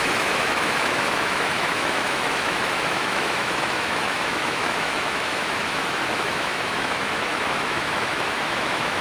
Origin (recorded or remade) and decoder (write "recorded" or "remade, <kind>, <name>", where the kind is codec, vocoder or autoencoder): remade, autoencoder, DAC-VAE